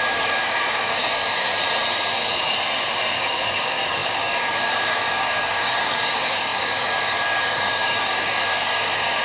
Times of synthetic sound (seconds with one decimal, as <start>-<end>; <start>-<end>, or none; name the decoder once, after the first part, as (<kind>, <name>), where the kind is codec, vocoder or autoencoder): 0.0-1.5 (codec, DAC); 3.2-9.2